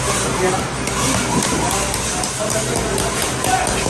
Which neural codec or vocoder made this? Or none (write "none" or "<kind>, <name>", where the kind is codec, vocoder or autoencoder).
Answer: none